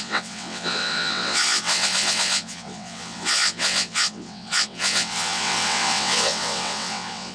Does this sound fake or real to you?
fake